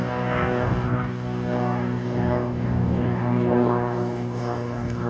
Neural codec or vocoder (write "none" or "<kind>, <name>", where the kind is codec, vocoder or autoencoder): codec, DAC